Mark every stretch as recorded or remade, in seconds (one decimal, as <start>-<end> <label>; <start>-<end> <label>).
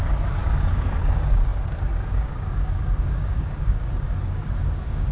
0.0-5.1 remade